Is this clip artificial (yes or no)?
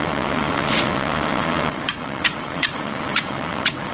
yes